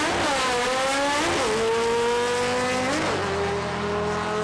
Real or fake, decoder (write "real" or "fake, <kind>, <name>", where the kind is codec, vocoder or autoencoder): real